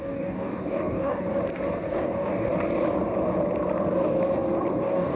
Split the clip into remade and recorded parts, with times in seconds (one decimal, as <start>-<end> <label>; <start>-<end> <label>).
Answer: 0.0-1.3 remade; 1.3-1.9 recorded; 1.9-2.5 remade; 2.5-4.8 recorded; 4.8-5.2 remade